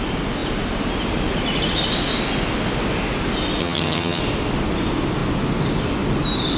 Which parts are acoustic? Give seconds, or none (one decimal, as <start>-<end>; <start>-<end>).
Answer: 0.0-3.6; 4.2-6.6